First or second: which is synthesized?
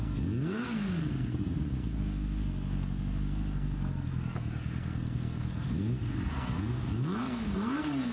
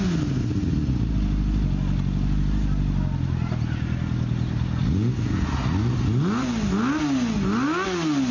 first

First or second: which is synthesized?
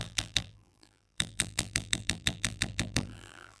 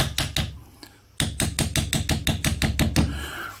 first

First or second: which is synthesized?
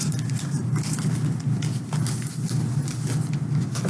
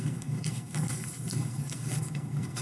second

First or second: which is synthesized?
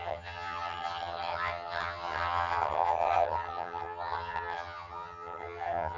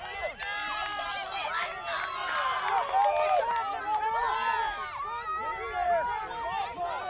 first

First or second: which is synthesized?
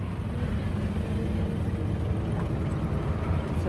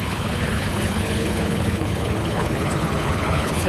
second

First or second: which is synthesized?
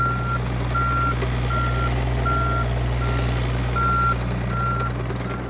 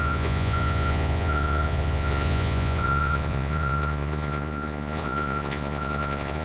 second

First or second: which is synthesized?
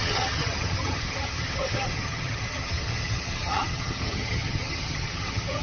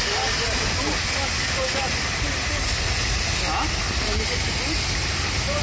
first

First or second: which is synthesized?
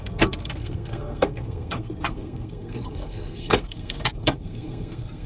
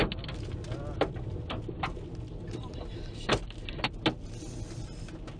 first